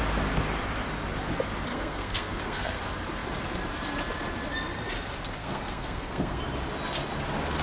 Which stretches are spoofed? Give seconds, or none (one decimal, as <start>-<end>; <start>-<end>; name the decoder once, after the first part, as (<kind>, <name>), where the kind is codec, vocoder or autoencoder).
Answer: 1.7-2.8 (codec, SNAC); 5.4-6.4